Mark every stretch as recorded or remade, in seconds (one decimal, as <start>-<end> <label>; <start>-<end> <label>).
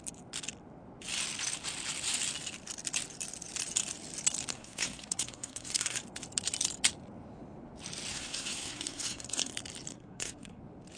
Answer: 0.0-4.5 recorded; 4.5-6.0 remade; 6.0-8.1 recorded; 8.1-9.5 remade; 9.5-9.9 recorded; 9.9-10.6 remade; 10.6-11.0 recorded